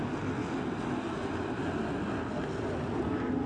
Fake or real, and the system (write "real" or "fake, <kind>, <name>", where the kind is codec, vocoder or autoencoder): real